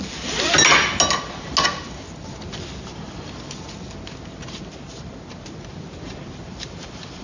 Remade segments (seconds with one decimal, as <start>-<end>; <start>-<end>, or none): none